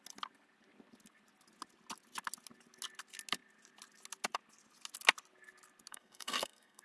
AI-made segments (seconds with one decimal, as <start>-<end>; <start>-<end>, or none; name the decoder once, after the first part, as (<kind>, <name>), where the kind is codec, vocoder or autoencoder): 5.9-6.8 (codec, SNAC)